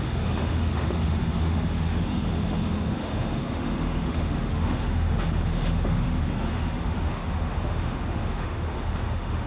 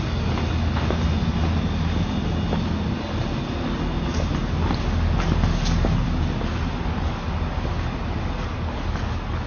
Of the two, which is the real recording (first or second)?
second